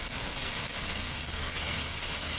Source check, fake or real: fake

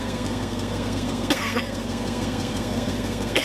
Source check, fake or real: fake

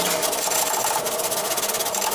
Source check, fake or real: real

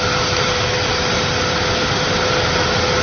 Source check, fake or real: real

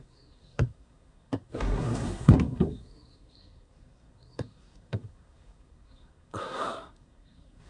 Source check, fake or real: fake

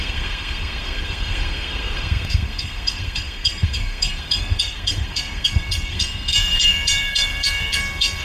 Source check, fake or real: fake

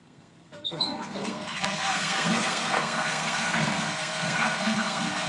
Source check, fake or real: fake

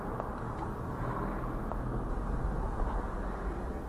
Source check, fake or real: real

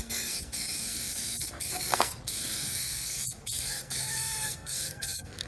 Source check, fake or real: fake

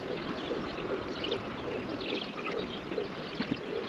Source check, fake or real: real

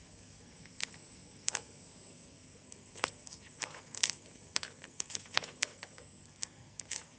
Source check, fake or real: fake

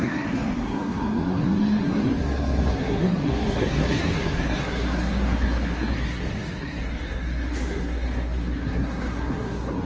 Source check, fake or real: fake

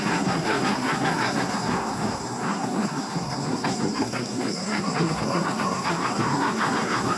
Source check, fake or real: fake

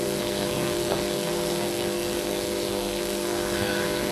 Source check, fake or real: fake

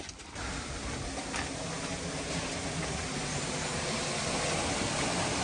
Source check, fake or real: real